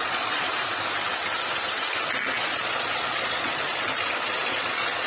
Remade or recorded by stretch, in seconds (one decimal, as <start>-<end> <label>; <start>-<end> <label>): 0.0-0.5 remade; 0.5-2.6 recorded; 2.6-3.5 remade; 3.5-4.4 recorded; 4.4-5.1 remade